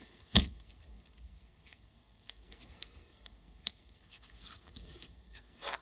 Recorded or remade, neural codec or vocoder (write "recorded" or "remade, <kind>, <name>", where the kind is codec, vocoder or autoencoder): remade, codec, SNAC